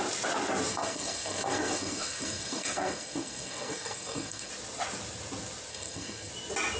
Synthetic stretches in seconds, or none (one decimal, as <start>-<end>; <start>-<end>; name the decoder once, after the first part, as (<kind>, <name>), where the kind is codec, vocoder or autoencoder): 0.7-4.5 (codec, SNAC); 5.7-6.3